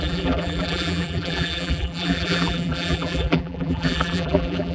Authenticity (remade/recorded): remade